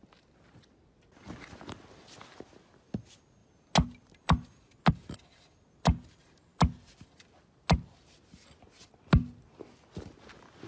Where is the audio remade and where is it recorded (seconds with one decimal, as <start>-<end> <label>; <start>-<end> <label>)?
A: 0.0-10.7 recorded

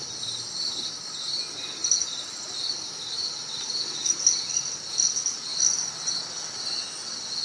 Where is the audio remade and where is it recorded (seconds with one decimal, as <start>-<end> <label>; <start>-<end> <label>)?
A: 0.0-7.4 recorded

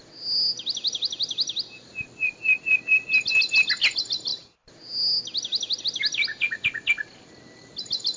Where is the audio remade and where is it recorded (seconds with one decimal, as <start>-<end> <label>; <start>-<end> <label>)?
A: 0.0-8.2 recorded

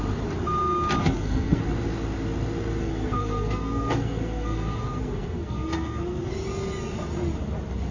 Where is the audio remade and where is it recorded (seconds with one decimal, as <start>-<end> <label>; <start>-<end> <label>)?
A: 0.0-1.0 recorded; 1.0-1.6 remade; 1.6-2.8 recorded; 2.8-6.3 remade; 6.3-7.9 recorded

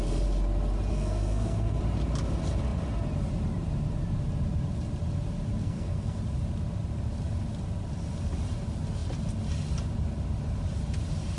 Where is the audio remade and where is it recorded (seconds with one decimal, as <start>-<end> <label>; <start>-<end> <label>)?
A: 0.0-0.9 recorded; 0.9-1.8 remade; 1.8-5.6 recorded; 5.6-6.2 remade; 6.2-11.4 recorded

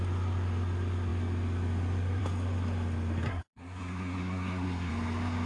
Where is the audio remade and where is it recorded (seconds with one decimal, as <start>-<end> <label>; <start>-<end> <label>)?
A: 0.0-3.3 recorded; 3.3-4.9 remade; 4.9-5.5 recorded